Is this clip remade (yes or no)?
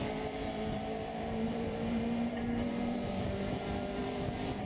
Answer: yes